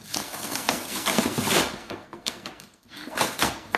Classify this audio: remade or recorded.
remade